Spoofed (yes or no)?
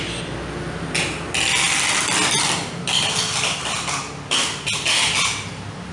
no